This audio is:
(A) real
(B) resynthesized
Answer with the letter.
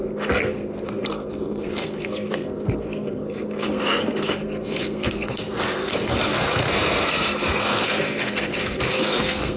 B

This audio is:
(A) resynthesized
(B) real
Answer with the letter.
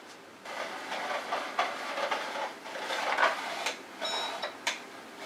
A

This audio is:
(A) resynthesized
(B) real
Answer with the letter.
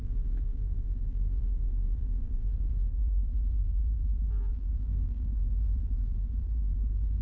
A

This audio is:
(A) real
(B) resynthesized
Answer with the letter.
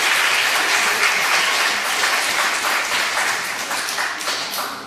A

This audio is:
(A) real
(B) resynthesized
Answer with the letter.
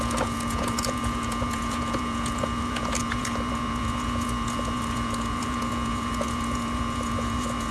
B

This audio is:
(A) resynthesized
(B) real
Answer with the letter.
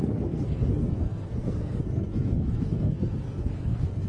A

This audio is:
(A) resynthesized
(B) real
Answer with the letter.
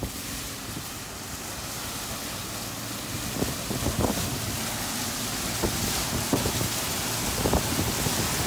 B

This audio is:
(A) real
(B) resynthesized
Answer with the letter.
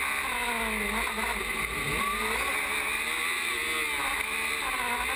A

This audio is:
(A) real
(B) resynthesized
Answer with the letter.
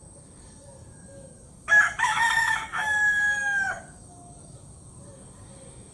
B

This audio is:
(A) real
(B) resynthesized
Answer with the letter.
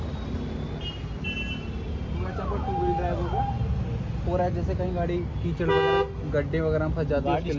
A